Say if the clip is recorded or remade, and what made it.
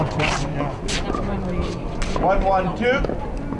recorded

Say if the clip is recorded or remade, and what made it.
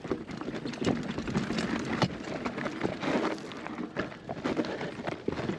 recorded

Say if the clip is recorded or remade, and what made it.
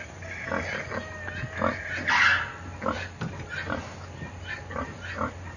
recorded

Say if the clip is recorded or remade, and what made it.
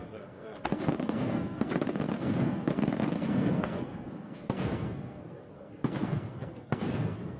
remade, codec, SNAC